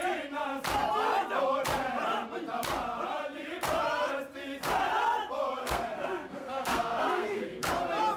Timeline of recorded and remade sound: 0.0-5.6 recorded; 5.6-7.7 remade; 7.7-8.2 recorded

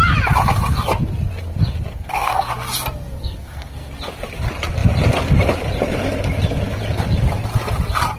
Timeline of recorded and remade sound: 0.0-1.9 recorded; 1.9-2.5 remade; 2.5-3.2 recorded; 3.2-3.9 remade; 3.9-8.2 recorded

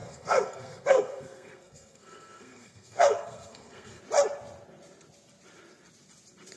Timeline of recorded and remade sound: 0.0-4.0 remade; 4.0-6.6 recorded

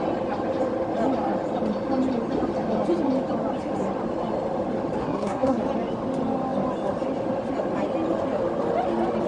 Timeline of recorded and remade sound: 0.0-5.0 recorded; 5.0-5.6 remade; 5.6-9.3 recorded

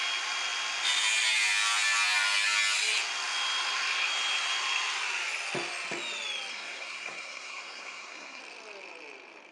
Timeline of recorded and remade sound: 0.0-6.5 recorded; 6.5-8.4 remade; 8.4-9.5 recorded

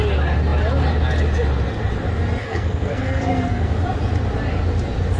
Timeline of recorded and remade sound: 0.0-2.4 recorded; 2.4-3.7 remade; 3.7-5.2 recorded